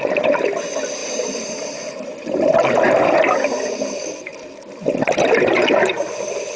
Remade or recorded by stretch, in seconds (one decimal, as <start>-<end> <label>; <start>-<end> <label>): 0.0-1.0 recorded; 1.0-2.7 remade; 2.7-6.6 recorded